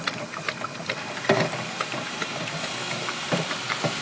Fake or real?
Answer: real